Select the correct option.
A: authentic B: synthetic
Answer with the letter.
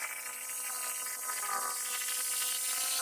A